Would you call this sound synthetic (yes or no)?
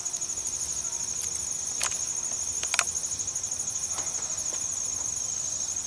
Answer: no